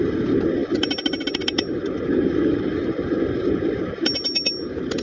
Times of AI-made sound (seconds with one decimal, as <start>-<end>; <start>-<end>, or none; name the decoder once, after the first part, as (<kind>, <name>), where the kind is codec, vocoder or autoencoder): none

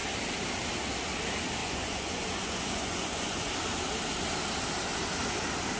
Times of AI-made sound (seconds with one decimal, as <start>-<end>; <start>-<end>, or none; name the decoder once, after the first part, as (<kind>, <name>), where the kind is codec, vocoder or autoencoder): 1.6-3.5 (vocoder, Vocos)

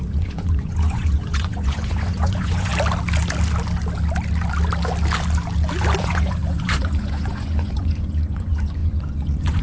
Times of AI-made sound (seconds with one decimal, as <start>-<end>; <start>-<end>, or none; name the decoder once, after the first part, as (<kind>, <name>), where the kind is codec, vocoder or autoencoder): 0.0-2.7 (vocoder, Vocos); 6.0-9.6

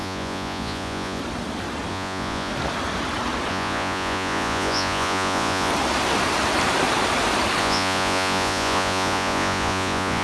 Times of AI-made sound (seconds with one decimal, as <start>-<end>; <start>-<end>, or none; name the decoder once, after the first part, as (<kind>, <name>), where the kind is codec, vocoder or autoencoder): 0.0-1.2 (vocoder, Vocos); 1.9-2.5; 3.5-5.7; 7.6-10.2

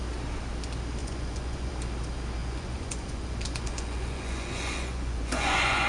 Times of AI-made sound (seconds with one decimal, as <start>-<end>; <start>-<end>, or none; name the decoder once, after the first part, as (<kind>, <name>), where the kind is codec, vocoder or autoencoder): 1.0-1.7 (vocoder, Vocos); 2.4-5.9

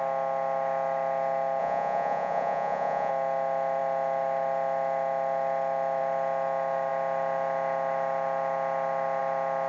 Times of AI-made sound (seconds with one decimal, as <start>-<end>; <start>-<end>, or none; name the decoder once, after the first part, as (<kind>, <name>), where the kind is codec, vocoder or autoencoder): 1.6-3.1 (vocoder, Vocos)

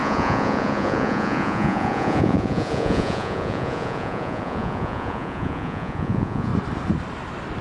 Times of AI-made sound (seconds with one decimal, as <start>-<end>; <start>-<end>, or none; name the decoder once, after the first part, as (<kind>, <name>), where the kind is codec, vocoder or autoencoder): 0.0-6.5 (vocoder, Vocos)

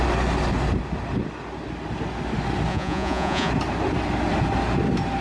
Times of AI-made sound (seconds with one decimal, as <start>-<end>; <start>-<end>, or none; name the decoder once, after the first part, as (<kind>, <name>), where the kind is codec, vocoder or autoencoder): 2.7-3.5 (vocoder, Vocos)